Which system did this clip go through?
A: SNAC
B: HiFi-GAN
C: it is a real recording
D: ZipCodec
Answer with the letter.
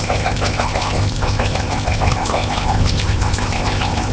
D